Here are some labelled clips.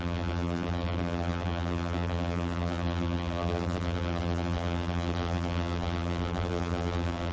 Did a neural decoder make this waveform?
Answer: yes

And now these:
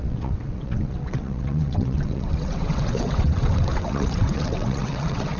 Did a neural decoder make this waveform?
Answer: yes